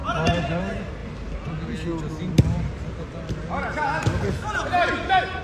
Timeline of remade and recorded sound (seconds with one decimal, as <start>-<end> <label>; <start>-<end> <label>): 0.0-5.4 recorded